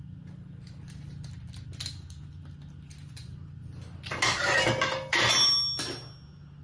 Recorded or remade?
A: recorded